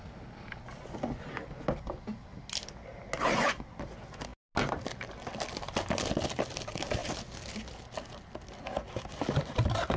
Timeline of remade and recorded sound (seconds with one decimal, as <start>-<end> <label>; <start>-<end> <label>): 0.0-10.0 recorded